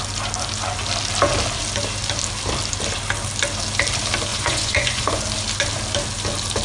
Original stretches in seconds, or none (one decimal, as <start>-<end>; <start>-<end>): 0.0-4.3; 5.2-6.6